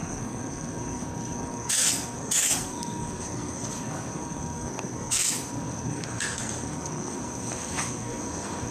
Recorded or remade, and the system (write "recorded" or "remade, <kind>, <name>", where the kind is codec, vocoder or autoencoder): remade, codec, SNAC